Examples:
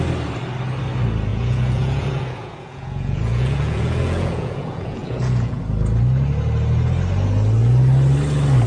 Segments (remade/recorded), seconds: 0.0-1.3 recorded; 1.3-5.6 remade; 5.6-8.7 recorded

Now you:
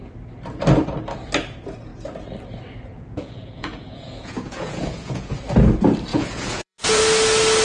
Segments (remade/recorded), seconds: 0.0-2.9 recorded; 2.9-5.4 remade; 5.4-6.1 recorded; 6.1-7.0 remade; 7.0-7.6 recorded

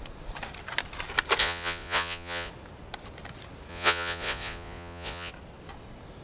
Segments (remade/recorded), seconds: 0.0-1.4 recorded; 1.4-2.5 remade; 2.5-3.7 recorded; 3.7-5.3 remade; 5.3-6.2 recorded